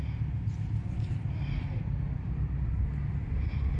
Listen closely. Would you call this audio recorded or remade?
recorded